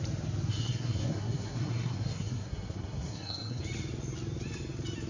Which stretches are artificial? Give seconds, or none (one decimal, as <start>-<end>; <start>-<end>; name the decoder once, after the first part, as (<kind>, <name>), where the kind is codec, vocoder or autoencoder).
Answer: 0.5-3.6 (codec, SNAC)